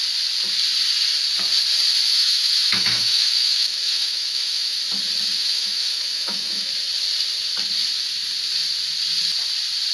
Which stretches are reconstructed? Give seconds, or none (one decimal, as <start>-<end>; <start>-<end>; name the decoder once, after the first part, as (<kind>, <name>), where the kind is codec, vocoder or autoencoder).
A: 2.1-4.8 (autoencoder, DAC-VAE); 5.3-6.7